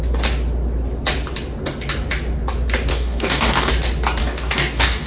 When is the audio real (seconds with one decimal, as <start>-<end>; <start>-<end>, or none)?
0.0-2.9; 3.7-4.2